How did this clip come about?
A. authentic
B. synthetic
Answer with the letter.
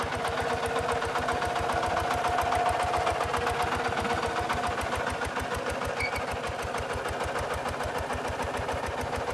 A